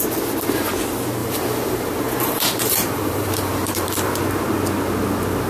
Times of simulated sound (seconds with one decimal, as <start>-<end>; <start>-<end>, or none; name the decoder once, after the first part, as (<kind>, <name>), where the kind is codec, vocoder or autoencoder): 1.2-4.1 (vocoder, BigVGAN v2)